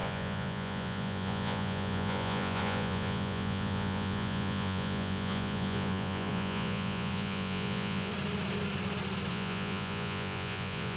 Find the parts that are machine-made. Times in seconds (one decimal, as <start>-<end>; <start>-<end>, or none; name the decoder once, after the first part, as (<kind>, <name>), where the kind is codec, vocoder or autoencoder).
0.0-8.1 (vocoder, Vocos); 9.3-11.0